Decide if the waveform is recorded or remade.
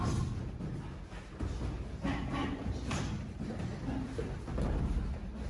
recorded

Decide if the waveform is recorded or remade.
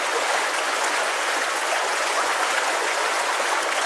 remade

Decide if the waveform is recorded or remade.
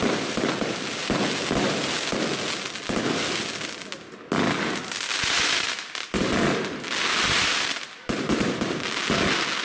recorded